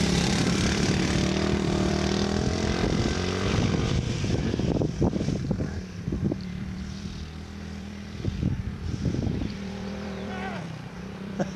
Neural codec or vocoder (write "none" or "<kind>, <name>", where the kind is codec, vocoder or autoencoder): vocoder, BigVGAN v2